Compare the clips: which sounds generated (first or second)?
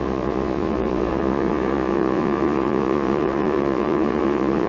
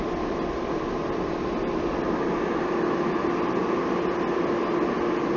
first